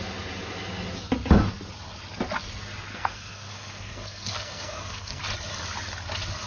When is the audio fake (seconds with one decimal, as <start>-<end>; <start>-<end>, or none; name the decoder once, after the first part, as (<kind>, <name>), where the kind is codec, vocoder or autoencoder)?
2.9-5.2 (codec, SNAC)